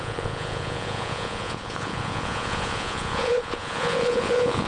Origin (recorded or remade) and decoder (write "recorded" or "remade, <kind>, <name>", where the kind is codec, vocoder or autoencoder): remade, vocoder, Vocos